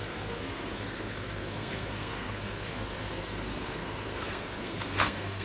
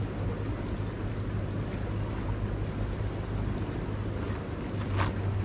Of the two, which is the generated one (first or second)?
first